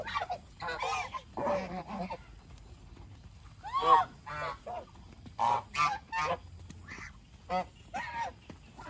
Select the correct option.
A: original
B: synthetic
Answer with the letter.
A